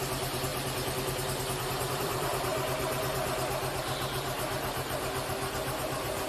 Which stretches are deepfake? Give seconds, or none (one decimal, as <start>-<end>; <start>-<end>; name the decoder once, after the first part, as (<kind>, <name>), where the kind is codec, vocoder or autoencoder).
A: 0.0-0.5 (vocoder, BigVGAN v2); 1.9-2.5